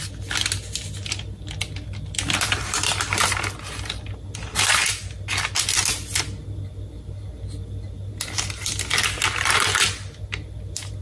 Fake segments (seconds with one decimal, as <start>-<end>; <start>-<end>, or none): none